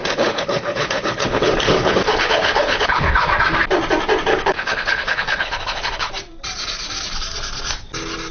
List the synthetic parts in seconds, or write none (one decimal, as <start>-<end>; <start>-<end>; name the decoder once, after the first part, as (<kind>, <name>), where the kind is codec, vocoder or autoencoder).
0.0-3.3 (codec, HILCodec); 4.3-6.1